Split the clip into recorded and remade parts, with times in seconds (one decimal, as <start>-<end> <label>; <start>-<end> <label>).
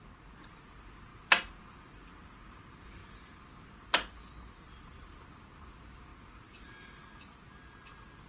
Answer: 0.0-8.3 recorded